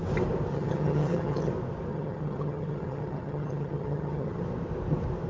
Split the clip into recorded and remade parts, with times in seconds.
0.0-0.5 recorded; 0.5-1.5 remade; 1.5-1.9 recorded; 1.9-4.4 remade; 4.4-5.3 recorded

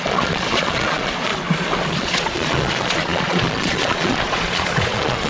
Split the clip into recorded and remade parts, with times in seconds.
0.0-1.3 remade; 1.3-1.9 recorded; 1.9-5.3 remade

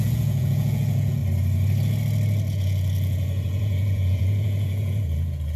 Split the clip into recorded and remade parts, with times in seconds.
0.0-1.2 remade; 1.2-2.5 recorded; 2.5-5.6 remade